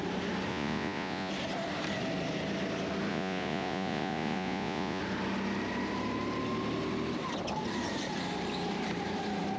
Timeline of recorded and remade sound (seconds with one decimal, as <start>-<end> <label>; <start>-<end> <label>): 0.0-0.5 recorded; 0.5-1.3 remade; 1.3-3.1 recorded; 3.1-5.0 remade; 5.0-9.6 recorded